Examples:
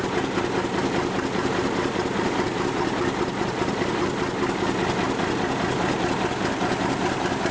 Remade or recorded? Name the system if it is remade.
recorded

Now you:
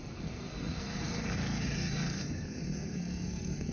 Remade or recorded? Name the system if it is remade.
remade, codec, SNAC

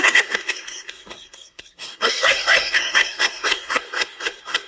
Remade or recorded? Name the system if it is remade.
remade, codec, SNAC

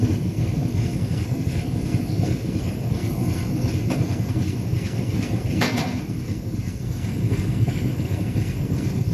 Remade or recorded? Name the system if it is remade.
remade, codec, SNAC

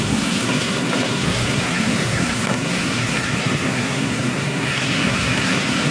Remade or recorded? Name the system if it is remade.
remade, codec, SNAC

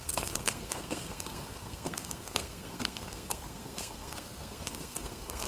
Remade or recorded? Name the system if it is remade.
remade, codec, SNAC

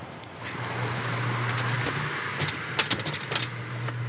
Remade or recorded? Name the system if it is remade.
recorded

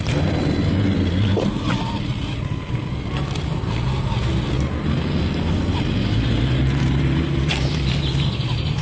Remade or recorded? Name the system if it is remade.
recorded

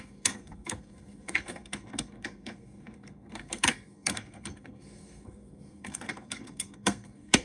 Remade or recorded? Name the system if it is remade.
remade, codec, SNAC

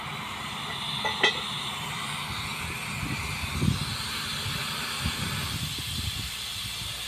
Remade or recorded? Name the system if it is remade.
recorded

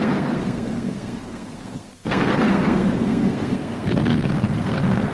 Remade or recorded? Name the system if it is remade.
remade, codec, SNAC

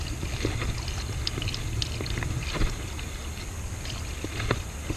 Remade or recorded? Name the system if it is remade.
recorded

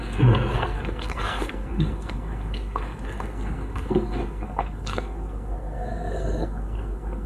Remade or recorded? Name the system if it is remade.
remade, codec, SNAC